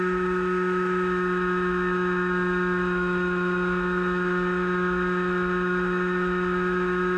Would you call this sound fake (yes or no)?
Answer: yes